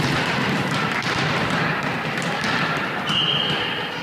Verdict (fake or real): real